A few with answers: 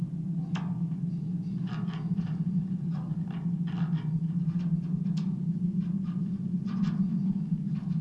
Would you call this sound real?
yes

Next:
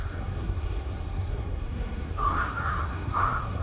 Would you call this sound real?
no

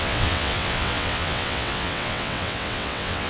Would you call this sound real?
no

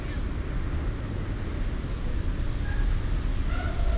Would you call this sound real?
yes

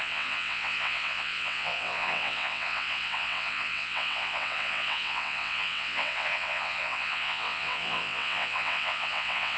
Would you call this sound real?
no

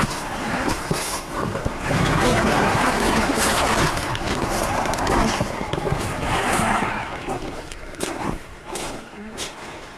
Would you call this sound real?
no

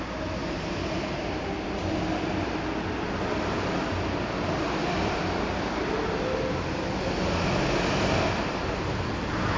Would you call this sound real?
yes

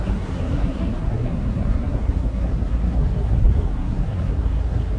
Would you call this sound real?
no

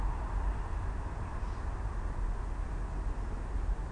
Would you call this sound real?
yes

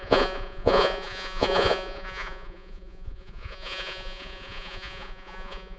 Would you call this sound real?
no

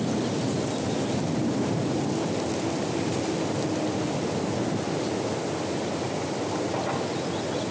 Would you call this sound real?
yes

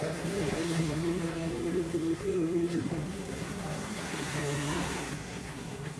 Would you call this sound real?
no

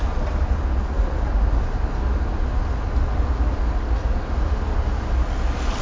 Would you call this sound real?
yes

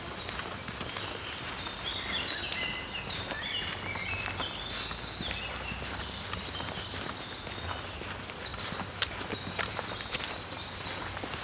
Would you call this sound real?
yes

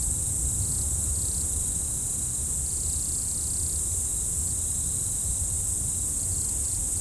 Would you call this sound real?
yes